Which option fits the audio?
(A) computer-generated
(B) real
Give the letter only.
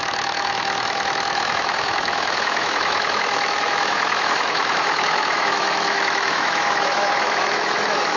A